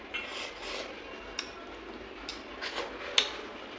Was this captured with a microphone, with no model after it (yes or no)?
yes